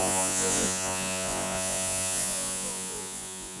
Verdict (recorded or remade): remade